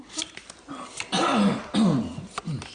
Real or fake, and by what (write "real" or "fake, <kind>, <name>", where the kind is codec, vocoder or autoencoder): real